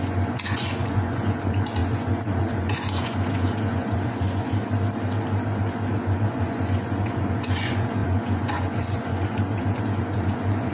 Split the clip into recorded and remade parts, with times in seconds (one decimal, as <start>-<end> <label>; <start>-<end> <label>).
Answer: 0.0-4.6 remade; 4.6-5.9 recorded; 5.9-10.7 remade